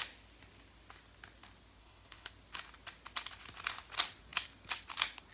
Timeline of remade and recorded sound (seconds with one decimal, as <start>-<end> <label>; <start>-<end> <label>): 0.0-1.8 recorded; 1.8-2.3 remade; 2.3-5.3 recorded